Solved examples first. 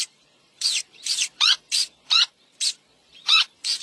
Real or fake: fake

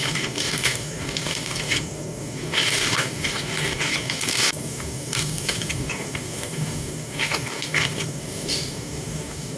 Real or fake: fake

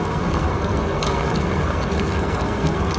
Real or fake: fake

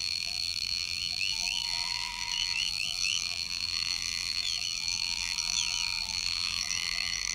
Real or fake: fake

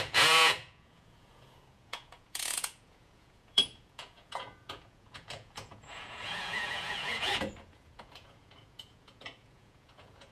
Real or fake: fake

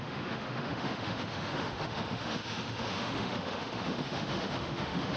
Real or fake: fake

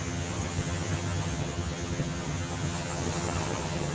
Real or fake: fake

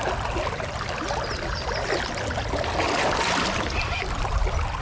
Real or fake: real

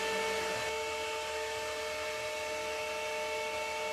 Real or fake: real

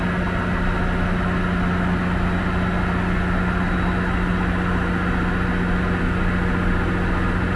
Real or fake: real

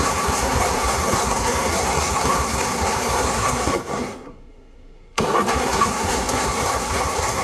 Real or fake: fake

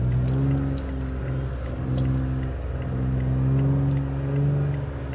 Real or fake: real